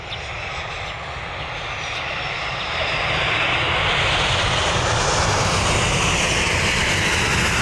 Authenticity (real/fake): real